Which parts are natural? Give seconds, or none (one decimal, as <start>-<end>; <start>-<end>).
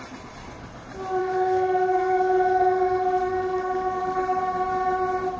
0.0-1.2; 4.4-5.4